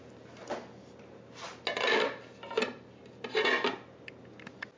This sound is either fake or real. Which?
real